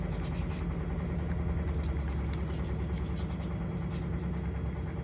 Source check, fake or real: real